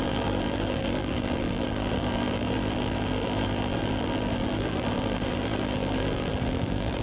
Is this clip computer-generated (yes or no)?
yes